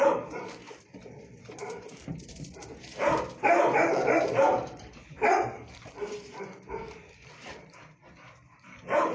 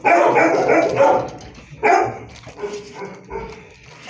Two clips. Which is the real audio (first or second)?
second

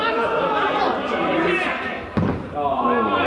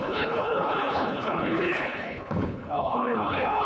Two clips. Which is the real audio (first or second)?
first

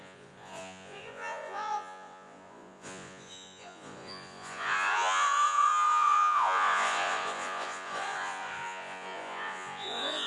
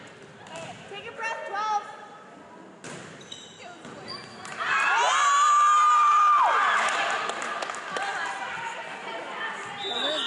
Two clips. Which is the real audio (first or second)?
second